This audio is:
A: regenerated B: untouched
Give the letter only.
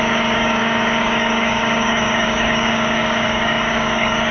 A